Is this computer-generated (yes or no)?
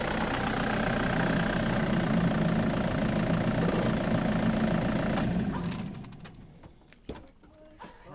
no